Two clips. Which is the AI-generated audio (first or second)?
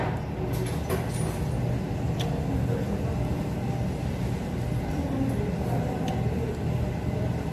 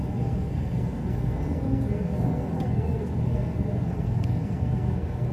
second